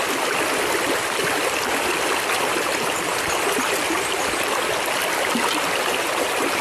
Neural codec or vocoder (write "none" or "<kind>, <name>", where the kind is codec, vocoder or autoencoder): none